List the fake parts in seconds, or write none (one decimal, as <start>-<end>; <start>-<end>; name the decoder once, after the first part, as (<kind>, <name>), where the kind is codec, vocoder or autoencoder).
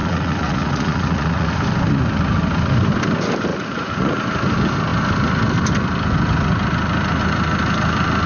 0.0-1.5 (vocoder, Vocos); 3.5-4.2